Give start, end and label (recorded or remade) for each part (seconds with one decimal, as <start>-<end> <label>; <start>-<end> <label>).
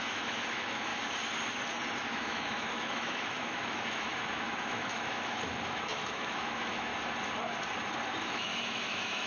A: 0.0-0.9 remade; 0.9-2.1 recorded; 2.1-6.9 remade; 6.9-8.2 recorded; 8.2-9.3 remade